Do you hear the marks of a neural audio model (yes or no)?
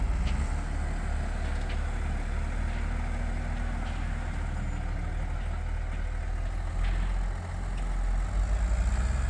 no